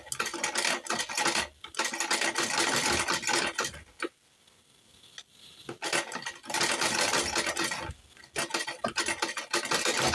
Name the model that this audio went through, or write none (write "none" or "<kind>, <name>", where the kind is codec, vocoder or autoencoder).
none